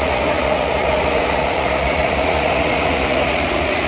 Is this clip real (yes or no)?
no